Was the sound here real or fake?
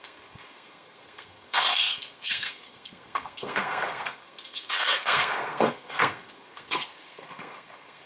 fake